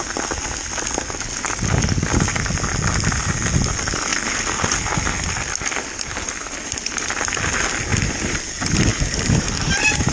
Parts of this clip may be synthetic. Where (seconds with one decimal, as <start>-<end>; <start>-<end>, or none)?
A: 8.9-10.1